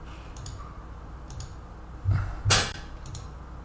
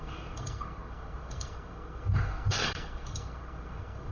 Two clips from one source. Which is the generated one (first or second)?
second